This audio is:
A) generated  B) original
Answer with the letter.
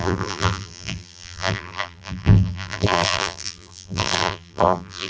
A